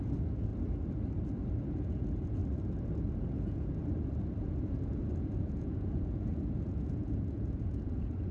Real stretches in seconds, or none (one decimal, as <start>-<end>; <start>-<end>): 0.5-1.6; 2.4-3.3; 3.8-4.4